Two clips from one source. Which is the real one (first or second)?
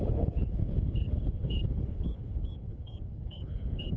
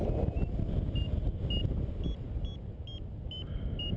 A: second